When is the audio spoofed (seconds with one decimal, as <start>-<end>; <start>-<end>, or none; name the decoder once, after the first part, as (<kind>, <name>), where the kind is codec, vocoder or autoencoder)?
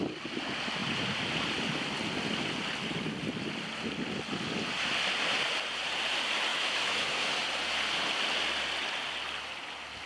6.5-7.3 (autoencoder, DAC-VAE)